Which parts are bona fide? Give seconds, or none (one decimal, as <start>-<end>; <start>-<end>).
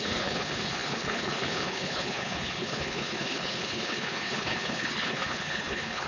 none